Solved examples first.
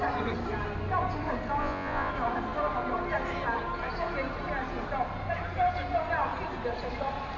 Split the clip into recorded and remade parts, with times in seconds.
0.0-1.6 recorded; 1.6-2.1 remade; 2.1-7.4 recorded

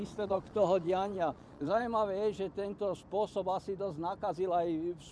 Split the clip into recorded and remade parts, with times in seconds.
0.0-1.8 remade; 1.8-5.1 recorded

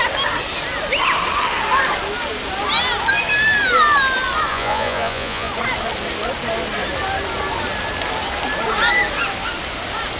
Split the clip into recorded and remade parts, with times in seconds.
0.0-4.5 recorded; 4.5-5.5 remade; 5.5-10.2 recorded

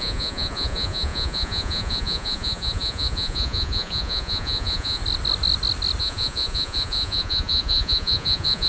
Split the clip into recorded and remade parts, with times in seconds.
0.0-5.0 remade; 5.0-6.0 recorded; 6.0-8.7 remade

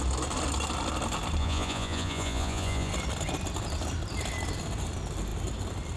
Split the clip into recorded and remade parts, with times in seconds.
0.0-1.4 recorded; 1.4-2.9 remade; 2.9-6.0 recorded

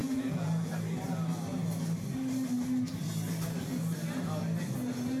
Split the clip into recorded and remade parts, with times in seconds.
0.0-0.7 remade; 0.7-5.2 recorded